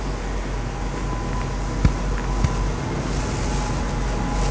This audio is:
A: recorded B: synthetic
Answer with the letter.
A